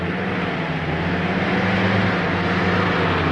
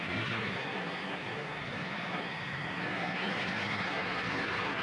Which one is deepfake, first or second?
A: second